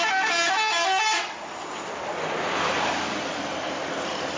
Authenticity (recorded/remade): recorded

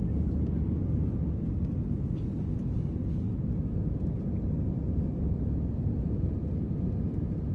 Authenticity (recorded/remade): recorded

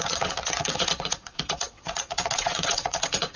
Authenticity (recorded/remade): remade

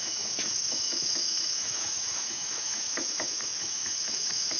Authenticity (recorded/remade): remade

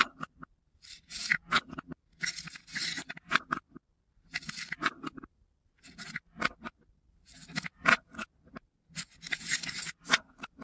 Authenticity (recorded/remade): recorded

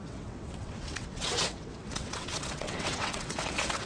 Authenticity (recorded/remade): remade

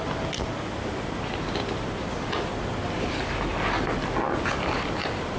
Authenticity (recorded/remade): recorded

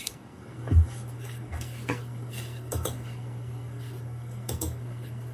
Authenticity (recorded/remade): remade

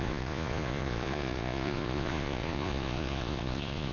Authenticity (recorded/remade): remade